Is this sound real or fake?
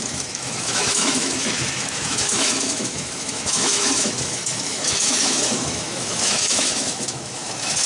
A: fake